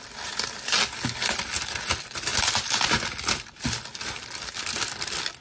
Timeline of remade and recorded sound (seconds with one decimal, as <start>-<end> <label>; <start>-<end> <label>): 0.0-5.4 recorded